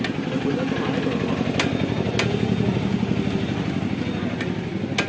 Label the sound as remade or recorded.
recorded